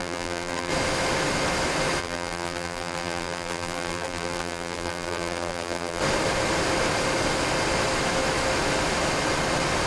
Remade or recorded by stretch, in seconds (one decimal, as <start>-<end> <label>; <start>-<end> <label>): 0.0-0.7 remade; 0.7-2.0 recorded; 2.0-6.0 remade; 6.0-9.9 recorded